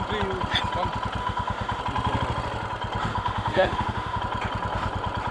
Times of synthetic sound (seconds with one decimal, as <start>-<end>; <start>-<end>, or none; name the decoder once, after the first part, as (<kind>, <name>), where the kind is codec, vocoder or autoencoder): 1.2-1.8 (autoencoder, DAC-VAE); 3.1-4.2